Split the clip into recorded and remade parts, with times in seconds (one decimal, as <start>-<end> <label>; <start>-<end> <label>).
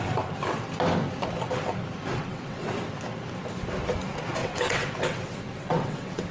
0.0-2.1 recorded; 2.1-2.7 remade; 2.7-4.4 recorded; 4.4-6.3 remade